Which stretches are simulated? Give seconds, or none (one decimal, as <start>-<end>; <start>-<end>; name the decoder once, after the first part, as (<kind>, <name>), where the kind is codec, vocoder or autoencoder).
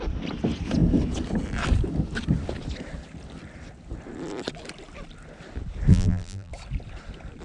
5.9-6.5 (vocoder, BigVGAN v2)